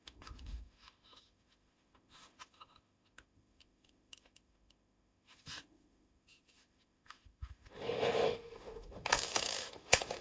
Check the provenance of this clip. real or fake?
fake